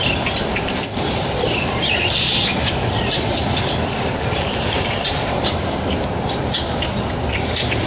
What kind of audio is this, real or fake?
fake